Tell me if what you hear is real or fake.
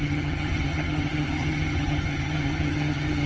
fake